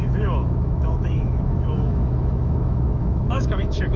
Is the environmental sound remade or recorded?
remade